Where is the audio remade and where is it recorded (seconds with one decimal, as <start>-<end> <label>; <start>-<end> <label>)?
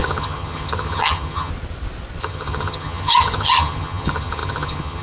0.0-1.5 remade; 1.5-2.2 recorded; 2.2-5.0 remade